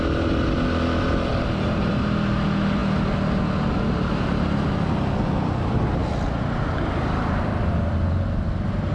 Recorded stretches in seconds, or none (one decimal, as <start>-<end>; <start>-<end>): 0.0-8.9